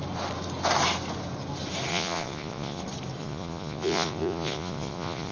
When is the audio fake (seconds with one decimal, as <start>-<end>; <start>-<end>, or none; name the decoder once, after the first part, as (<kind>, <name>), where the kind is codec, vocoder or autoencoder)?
1.9-2.8 (vocoder, Vocos); 3.2-5.3